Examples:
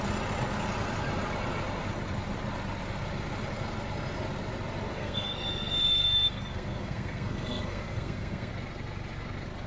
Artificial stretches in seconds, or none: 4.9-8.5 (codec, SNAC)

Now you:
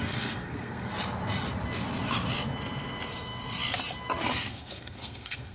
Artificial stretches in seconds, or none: 0.0-0.9 (codec, SNAC); 4.2-5.5

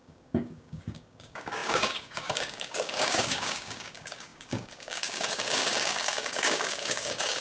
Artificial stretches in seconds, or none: 0.0-7.4 (codec, DAC)

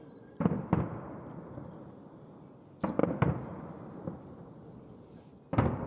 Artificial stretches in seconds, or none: none

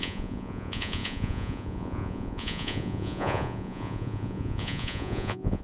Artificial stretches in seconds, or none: 0.0-5.6 (vocoder, Vocos)

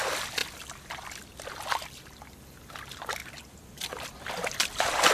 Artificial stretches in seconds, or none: 3.2-4.1 (vocoder, BigVGAN v2)

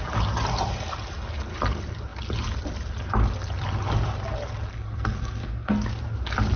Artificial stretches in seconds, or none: 4.7-5.7 (codec, SNAC)